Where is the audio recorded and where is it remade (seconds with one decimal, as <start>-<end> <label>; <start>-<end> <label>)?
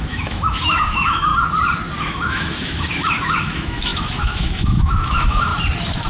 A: 0.0-1.3 remade; 1.3-2.0 recorded; 2.0-5.5 remade; 5.5-6.1 recorded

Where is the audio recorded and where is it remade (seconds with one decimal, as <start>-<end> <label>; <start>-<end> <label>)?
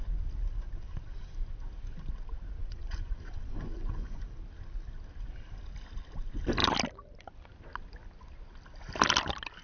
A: 0.0-2.6 recorded; 2.6-4.2 remade; 4.2-9.6 recorded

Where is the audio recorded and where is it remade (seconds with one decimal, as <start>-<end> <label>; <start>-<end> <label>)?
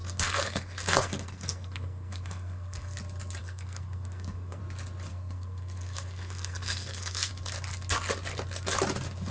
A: 0.0-3.0 remade; 3.0-3.4 recorded; 3.4-4.6 remade; 4.6-5.1 recorded; 5.1-7.3 remade; 7.3-9.3 recorded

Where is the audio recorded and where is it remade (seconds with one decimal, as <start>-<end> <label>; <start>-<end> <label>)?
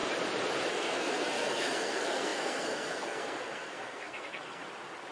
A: 0.0-0.7 recorded; 0.7-4.6 remade; 4.6-5.1 recorded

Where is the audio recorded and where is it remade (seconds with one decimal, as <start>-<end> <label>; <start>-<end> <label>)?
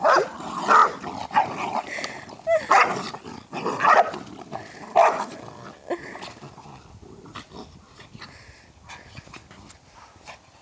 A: 0.0-0.8 recorded; 0.8-2.9 remade; 2.9-10.6 recorded